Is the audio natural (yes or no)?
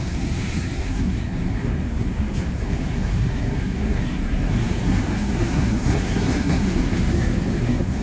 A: no